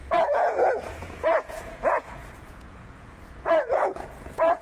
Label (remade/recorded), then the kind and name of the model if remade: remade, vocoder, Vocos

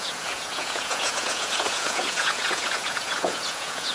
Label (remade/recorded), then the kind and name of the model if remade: remade, vocoder, Vocos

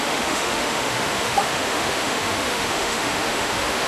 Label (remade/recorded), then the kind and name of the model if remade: remade, autoencoder, DAC-VAE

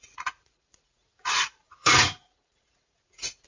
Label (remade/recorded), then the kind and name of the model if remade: remade, vocoder, Vocos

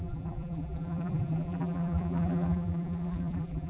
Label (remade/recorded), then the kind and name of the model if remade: remade, vocoder, BigVGAN v2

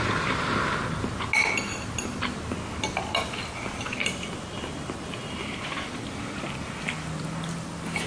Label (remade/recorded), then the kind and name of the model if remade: recorded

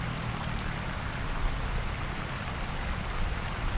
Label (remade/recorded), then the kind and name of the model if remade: recorded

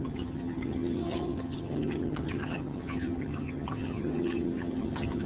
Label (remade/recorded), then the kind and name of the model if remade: remade, vocoder, HiFi-GAN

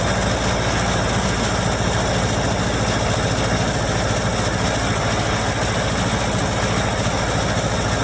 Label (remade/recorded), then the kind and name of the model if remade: recorded